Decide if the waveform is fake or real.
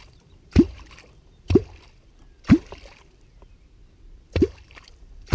fake